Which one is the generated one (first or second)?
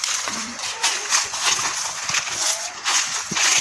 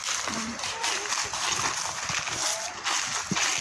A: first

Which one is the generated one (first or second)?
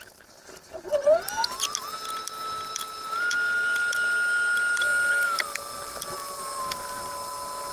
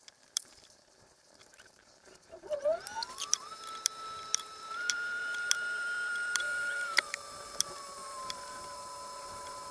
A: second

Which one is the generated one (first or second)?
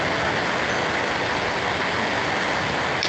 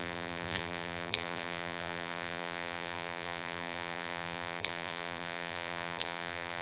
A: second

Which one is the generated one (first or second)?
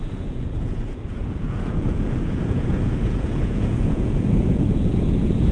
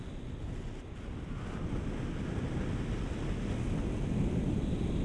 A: first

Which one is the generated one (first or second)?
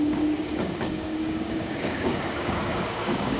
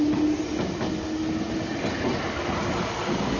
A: first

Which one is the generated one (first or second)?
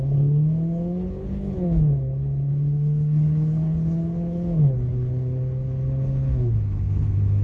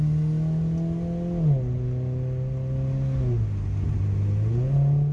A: first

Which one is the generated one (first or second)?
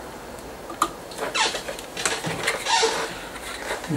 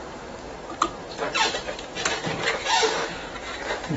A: second